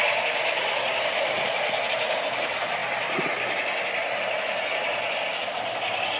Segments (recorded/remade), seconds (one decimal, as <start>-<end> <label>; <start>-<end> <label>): 0.0-6.2 recorded